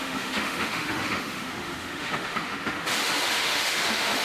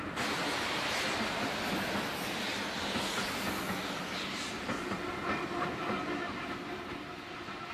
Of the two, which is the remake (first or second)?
first